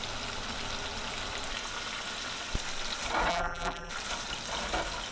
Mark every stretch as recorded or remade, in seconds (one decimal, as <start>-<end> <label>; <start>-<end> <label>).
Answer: 0.0-3.3 recorded; 3.3-3.9 remade; 3.9-5.1 recorded